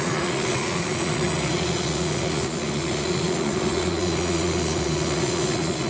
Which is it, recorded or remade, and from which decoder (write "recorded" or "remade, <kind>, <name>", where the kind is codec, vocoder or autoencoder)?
remade, vocoder, Vocos